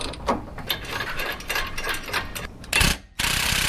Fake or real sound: real